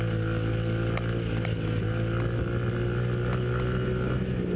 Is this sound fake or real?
real